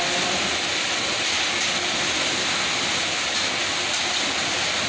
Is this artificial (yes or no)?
no